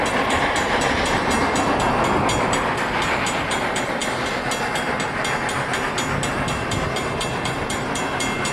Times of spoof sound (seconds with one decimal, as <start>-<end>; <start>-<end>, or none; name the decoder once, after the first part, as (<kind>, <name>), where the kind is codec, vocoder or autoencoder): 0.0-4.0 (vocoder, BigVGAN v2); 6.5-8.5